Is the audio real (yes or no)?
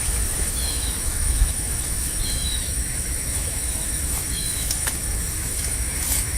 no